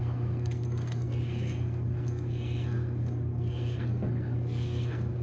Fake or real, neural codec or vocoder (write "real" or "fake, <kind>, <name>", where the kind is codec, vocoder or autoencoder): fake, codec, SNAC